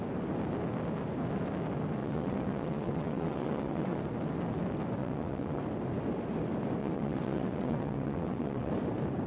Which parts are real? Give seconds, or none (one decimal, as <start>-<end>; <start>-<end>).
0.0-2.0; 4.0-5.0; 5.6-6.8; 8.7-9.3